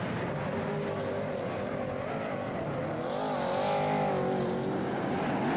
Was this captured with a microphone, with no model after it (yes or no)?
yes